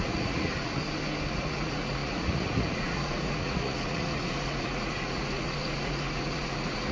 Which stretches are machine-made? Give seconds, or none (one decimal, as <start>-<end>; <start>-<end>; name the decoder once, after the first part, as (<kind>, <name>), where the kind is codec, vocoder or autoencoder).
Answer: 0.0-0.8 (vocoder, Vocos); 1.3-6.9